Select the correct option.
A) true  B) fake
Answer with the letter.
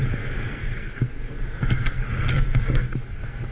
B